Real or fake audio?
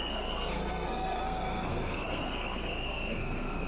fake